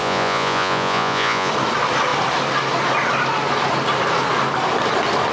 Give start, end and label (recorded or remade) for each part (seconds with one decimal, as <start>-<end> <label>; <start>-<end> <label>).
0.0-1.5 remade; 1.5-5.3 recorded